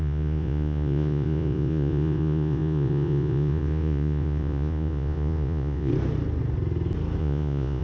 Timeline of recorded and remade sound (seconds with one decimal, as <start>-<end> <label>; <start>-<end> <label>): 0.0-5.9 remade; 5.9-7.2 recorded; 7.2-7.8 remade